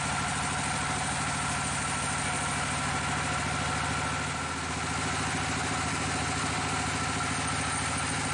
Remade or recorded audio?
recorded